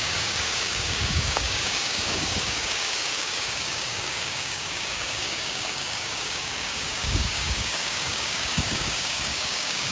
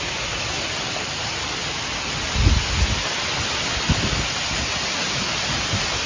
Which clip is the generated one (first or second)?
first